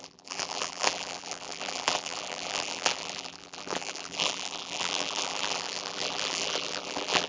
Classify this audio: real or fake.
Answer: fake